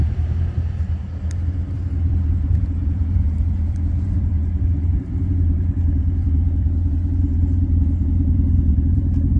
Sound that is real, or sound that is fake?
fake